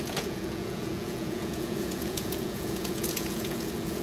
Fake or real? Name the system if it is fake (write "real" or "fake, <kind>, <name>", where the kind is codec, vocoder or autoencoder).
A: fake, vocoder, Vocos